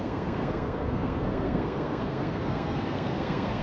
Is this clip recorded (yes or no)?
no